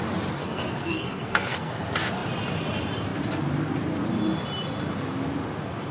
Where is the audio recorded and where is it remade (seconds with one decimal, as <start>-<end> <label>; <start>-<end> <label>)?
0.0-0.4 recorded; 0.4-1.7 remade; 1.7-5.9 recorded